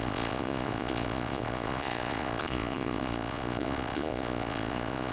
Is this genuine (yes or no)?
no